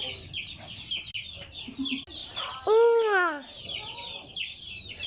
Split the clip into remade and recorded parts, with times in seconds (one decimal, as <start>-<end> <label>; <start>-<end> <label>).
0.0-5.1 recorded